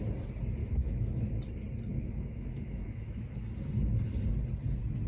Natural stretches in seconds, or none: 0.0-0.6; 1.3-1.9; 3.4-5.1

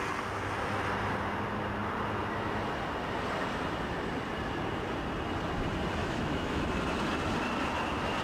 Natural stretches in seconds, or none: 0.0-6.0; 6.6-8.2

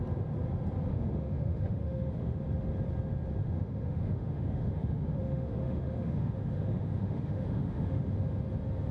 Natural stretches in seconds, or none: 0.0-0.9; 2.4-3.4; 8.1-8.9

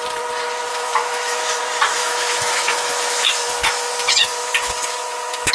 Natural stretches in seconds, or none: 0.0-0.7; 1.6-2.0

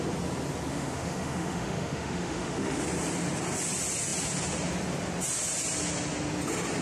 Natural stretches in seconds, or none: 0.0-0.7; 2.8-6.8

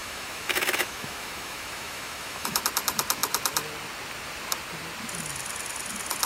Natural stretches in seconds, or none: 2.6-6.3